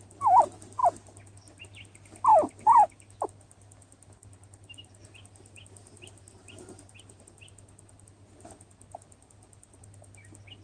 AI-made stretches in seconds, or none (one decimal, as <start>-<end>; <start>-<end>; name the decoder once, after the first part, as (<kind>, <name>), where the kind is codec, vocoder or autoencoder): 0.8-1.6 (vocoder, BigVGAN v2); 2.3-7.2